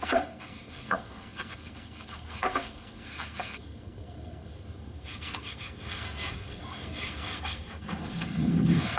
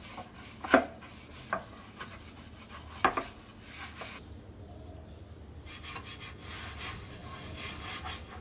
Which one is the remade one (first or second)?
first